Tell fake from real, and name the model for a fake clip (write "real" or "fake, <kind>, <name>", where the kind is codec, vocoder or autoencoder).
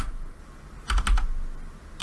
real